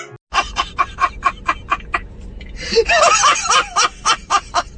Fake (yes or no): no